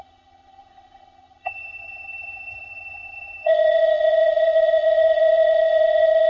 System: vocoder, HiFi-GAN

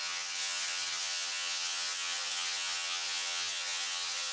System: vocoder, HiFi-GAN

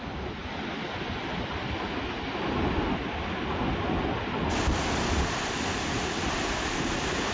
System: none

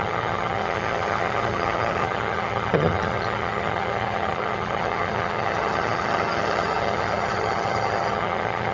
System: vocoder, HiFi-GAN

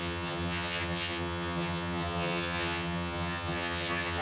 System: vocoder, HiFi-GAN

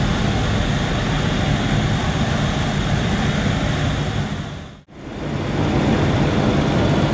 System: none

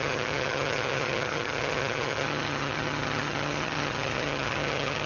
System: vocoder, HiFi-GAN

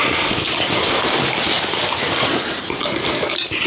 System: none